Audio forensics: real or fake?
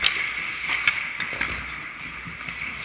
real